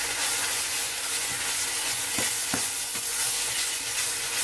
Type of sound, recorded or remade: remade